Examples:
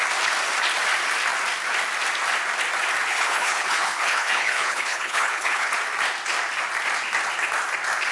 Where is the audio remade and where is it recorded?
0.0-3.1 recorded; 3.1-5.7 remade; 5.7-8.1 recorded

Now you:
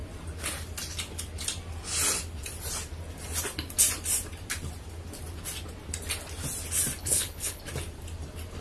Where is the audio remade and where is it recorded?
0.0-7.0 recorded; 7.0-7.6 remade; 7.6-8.6 recorded

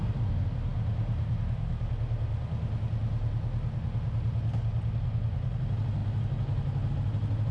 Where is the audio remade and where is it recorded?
0.0-7.5 recorded

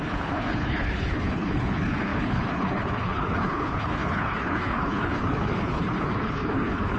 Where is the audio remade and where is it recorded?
0.0-7.0 remade

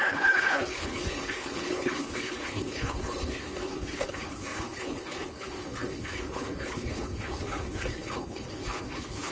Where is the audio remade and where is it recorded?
0.0-9.3 remade

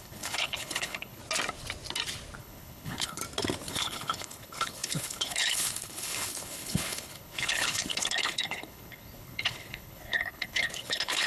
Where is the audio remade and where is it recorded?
0.0-1.2 remade; 1.2-2.4 recorded; 2.4-3.2 remade; 3.2-3.7 recorded; 3.7-11.3 remade

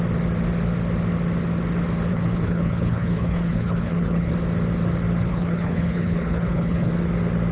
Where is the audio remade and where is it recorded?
0.0-2.1 recorded; 2.1-4.3 remade; 4.3-5.3 recorded; 5.3-6.9 remade; 6.9-7.5 recorded